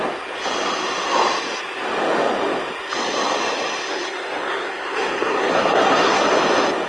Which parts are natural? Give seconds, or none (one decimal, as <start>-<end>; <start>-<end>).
0.0-3.9; 6.2-6.9

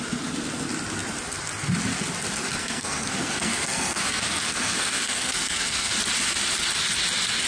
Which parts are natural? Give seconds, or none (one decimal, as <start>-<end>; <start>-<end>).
0.0-2.6; 5.9-7.5